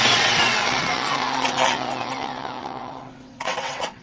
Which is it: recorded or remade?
remade